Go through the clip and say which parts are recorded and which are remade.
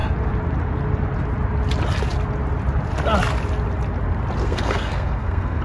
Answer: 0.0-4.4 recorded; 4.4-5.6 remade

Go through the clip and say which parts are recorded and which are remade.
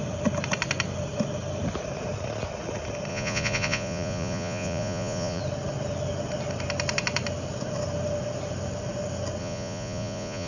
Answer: 0.0-3.1 recorded; 3.1-5.4 remade; 5.4-9.4 recorded; 9.4-10.5 remade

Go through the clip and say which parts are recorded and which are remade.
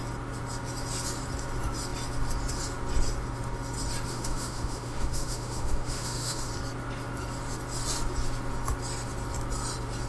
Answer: 0.0-4.1 recorded; 4.1-6.5 remade; 6.5-10.1 recorded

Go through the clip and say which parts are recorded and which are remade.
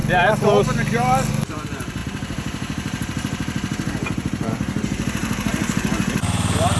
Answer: 0.0-1.3 recorded; 1.3-6.8 remade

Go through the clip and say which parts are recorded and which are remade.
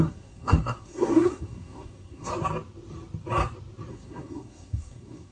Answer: 0.0-2.3 remade; 2.3-3.9 recorded; 3.9-5.3 remade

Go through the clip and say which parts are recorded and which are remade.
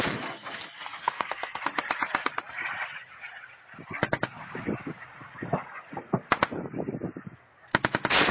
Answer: 0.0-1.0 recorded; 1.0-1.6 remade; 1.6-8.3 recorded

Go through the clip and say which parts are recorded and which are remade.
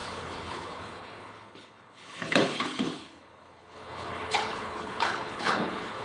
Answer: 0.0-6.0 remade